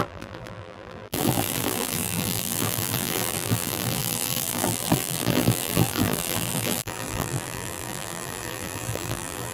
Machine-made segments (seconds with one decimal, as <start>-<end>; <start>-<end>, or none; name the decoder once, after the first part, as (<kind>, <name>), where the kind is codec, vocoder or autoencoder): 0.0-9.5 (vocoder, BigVGAN v2)